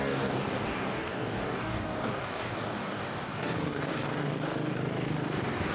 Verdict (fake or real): fake